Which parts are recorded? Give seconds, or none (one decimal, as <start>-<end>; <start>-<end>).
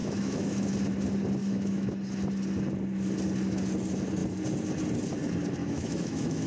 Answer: 0.7-1.4; 1.9-5.6